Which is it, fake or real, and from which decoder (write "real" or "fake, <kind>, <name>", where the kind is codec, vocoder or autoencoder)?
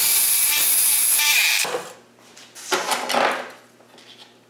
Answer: real